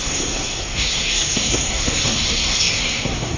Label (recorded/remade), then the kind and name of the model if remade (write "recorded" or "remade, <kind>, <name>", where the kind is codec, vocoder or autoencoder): remade, codec, SNAC